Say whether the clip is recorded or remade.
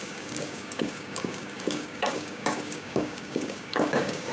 remade